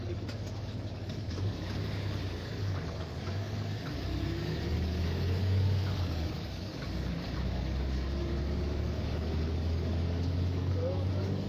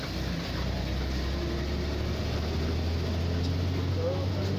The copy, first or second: first